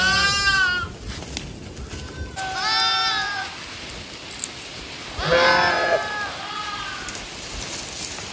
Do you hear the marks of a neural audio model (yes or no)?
no